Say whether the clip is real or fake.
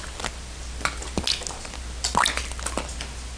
real